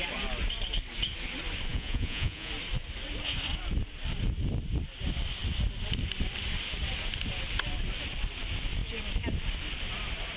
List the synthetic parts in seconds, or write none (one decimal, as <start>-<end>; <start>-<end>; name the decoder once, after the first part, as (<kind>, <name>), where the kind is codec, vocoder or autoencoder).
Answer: 1.7-2.5 (vocoder, Vocos)